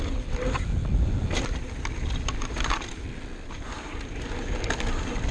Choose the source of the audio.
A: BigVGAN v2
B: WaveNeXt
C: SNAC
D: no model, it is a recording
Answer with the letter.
D